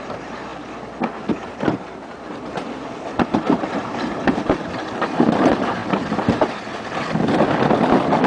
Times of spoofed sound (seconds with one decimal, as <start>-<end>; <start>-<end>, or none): 0.0-0.5; 1.2-5.8